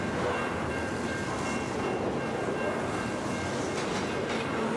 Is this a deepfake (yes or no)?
no